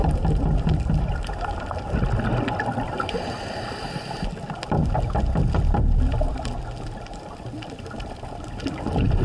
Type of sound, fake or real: fake